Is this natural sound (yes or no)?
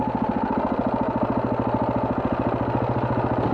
yes